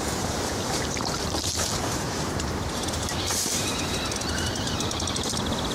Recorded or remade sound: remade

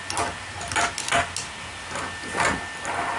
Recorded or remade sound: recorded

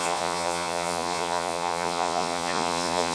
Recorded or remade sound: remade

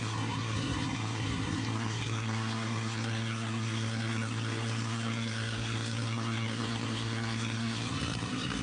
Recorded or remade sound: remade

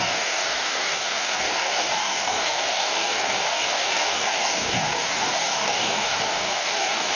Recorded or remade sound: remade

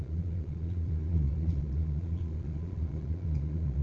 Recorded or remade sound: remade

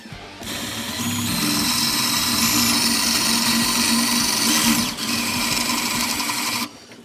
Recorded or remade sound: recorded